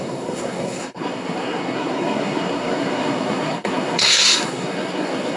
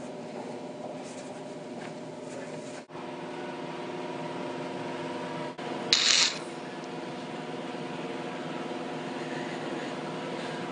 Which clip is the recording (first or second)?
second